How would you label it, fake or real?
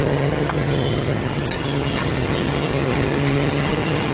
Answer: fake